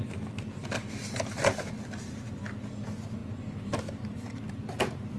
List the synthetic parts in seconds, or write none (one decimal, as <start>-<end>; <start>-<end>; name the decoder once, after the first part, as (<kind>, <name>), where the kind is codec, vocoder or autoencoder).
none

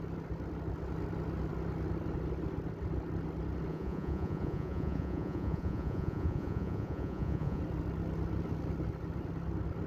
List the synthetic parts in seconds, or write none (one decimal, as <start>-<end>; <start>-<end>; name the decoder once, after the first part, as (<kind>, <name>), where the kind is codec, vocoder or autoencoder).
3.7-7.6 (vocoder, Vocos)